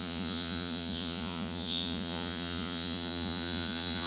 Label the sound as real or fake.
fake